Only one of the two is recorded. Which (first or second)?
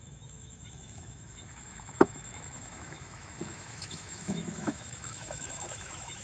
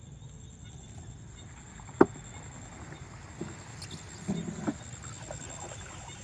second